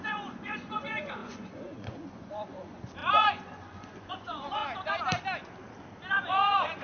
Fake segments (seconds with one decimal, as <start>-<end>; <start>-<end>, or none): 0.0-4.6; 6.3-6.8